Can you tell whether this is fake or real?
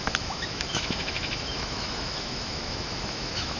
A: fake